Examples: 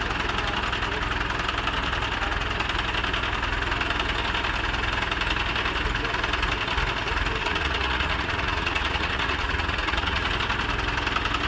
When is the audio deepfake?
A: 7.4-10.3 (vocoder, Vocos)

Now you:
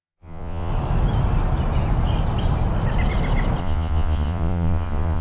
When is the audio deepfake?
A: 0.0-0.7 (vocoder, Vocos); 3.6-5.2

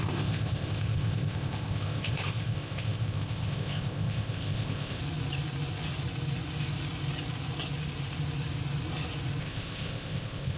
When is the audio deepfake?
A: 0.0-5.0 (codec, ZipCodec); 9.4-10.6

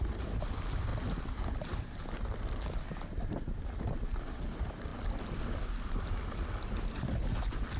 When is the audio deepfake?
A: none

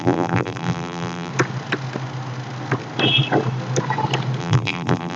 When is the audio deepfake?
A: 0.0-1.3 (vocoder, BigVGAN v2); 4.4-5.2

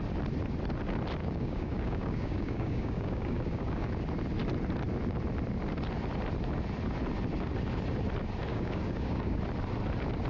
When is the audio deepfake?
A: 1.2-3.9 (codec, DAC); 8.5-9.4